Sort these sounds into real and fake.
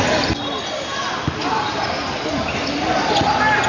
real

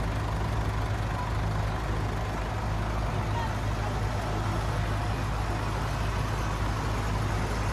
real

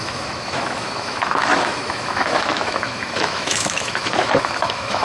fake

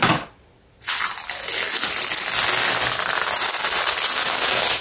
real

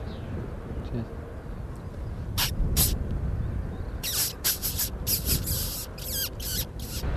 real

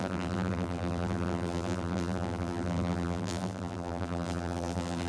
fake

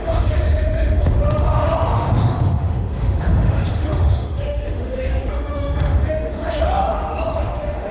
fake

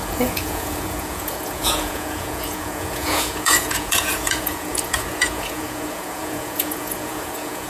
fake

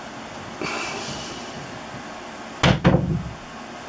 real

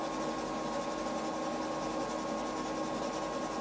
real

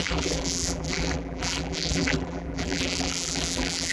fake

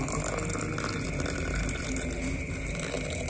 real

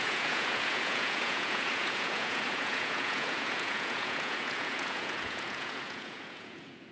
fake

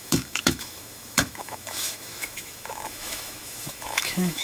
fake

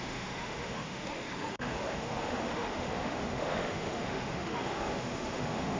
fake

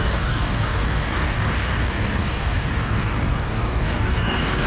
fake